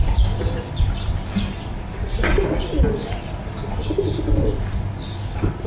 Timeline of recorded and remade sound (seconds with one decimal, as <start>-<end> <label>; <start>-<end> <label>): 0.0-5.7 recorded